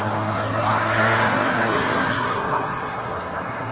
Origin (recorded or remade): remade